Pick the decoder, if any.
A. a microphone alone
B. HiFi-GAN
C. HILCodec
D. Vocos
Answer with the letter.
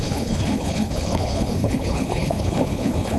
C